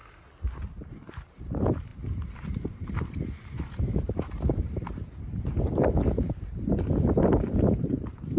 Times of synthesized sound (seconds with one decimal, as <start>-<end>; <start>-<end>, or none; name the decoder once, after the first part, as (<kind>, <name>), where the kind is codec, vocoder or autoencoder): 1.1-6.7 (vocoder, BigVGAN v2); 7.3-8.4